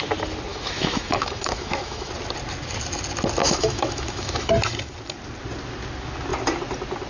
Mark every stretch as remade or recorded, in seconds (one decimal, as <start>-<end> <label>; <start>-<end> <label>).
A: 0.0-0.5 recorded; 0.5-2.1 remade; 2.1-3.4 recorded; 3.4-4.5 remade; 4.5-7.1 recorded